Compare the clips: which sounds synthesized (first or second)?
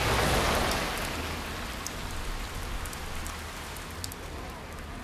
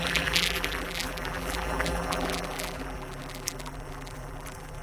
second